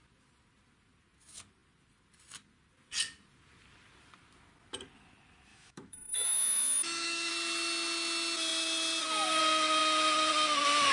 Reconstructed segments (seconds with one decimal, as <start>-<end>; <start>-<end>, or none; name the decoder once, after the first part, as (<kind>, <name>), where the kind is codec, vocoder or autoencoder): 5.5-7.3 (autoencoder, DAC-VAE)

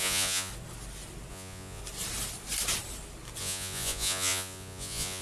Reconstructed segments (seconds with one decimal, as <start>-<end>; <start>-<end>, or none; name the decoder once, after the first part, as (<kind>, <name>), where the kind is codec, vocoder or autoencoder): 0.0-0.5 (vocoder, Vocos); 1.3-1.8; 3.4-5.2

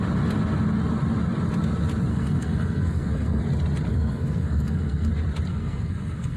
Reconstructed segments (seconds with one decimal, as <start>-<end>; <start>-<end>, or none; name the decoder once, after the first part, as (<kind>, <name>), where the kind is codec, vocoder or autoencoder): 2.1-3.4 (codec, SNAC); 3.9-5.1; 5.5-6.4